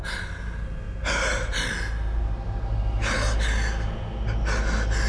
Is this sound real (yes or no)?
yes